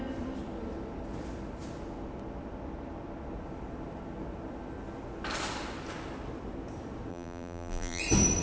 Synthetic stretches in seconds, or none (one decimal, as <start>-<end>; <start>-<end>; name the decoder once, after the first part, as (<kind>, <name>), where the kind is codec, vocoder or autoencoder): 7.1-8.0 (vocoder, BigVGAN v2)